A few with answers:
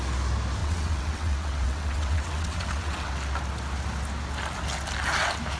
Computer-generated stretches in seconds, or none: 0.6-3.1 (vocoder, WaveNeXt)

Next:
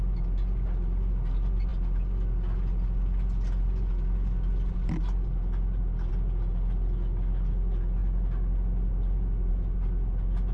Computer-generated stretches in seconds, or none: none

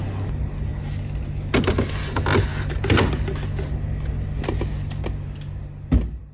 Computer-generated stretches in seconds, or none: none

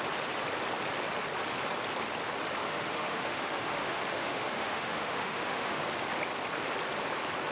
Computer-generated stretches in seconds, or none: 2.6-5.8 (autoencoder, DAC-VAE)

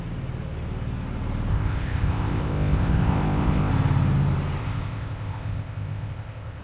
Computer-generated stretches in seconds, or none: 1.5-3.7 (codec, ZipCodec); 4.6-6.6

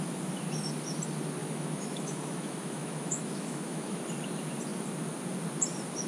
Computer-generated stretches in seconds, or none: 1.4-4.0 (autoencoder, DAC-VAE)

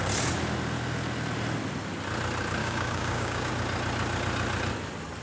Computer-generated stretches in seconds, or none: 2.6-3.5 (codec, DAC)